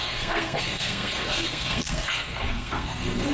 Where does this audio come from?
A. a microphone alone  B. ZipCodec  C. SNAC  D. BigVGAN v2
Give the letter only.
C